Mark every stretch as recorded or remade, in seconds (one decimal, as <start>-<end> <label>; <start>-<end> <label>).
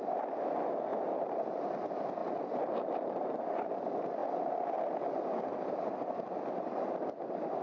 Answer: 0.0-2.2 recorded; 2.2-3.3 remade; 3.3-7.6 recorded